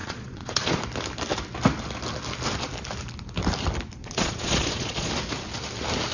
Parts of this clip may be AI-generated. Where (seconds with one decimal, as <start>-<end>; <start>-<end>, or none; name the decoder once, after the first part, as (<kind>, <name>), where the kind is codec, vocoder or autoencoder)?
0.0-0.8 (vocoder, Vocos); 4.0-5.1